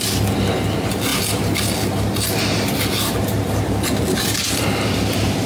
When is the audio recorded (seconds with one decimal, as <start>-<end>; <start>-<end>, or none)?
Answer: 0.0-5.5